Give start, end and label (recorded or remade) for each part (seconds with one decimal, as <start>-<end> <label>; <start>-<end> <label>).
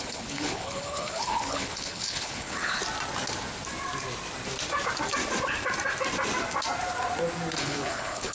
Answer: 0.0-2.8 remade; 2.8-7.6 recorded; 7.6-8.3 remade